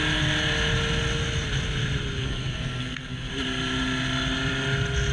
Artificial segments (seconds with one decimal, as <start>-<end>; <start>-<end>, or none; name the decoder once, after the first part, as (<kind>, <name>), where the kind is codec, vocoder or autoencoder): 2.2-3.3 (codec, SNAC)